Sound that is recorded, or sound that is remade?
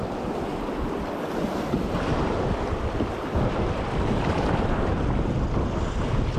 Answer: remade